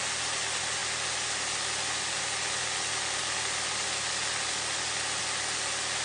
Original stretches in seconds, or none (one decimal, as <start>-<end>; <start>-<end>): 0.0-6.0